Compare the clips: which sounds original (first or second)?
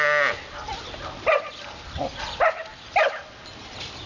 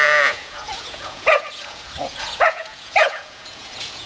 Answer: first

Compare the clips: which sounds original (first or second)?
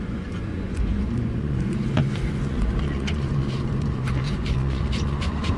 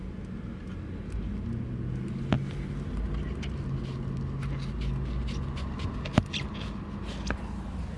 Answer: second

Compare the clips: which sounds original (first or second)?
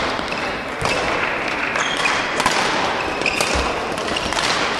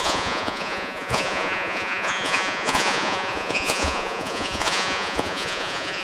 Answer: first